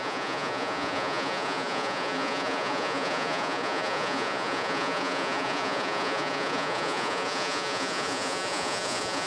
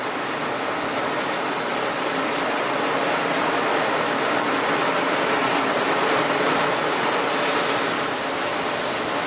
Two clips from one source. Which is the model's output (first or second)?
first